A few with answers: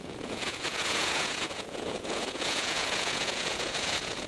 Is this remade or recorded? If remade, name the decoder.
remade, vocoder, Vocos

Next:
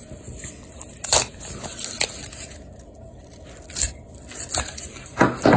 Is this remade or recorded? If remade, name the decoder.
recorded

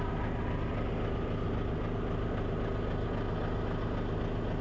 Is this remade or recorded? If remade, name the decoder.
recorded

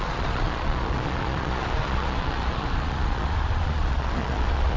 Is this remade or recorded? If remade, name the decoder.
remade, vocoder, Vocos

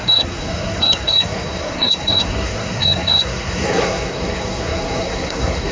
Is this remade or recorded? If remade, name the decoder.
remade, codec, SNAC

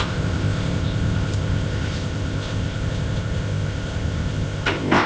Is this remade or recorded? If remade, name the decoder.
remade, codec, ZipCodec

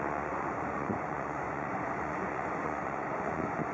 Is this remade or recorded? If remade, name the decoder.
remade, vocoder, Vocos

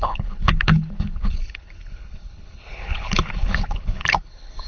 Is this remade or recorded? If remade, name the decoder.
remade, codec, HILCodec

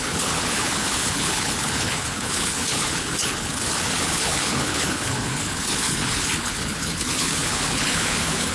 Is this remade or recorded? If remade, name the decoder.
remade, codec, HILCodec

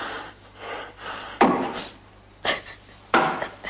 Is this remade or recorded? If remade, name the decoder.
recorded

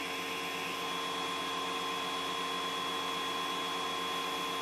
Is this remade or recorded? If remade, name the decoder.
recorded